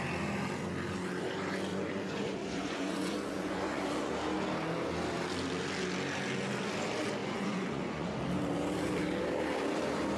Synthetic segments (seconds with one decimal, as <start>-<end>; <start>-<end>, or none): 1.7-4.1; 7.2-8.2